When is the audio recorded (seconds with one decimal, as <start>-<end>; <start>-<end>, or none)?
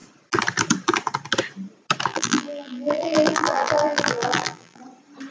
0.0-2.1; 4.8-5.3